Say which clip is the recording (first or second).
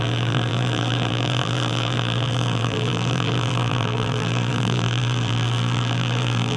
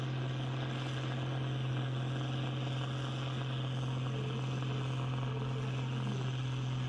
second